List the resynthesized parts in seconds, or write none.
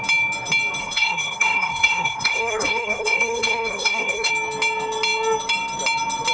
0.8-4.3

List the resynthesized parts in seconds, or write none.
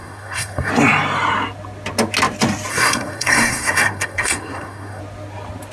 0.0-0.7; 2.7-5.0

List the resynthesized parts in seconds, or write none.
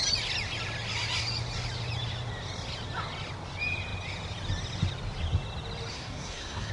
5.9-6.7